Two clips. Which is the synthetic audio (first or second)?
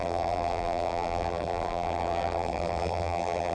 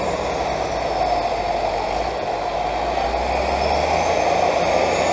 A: first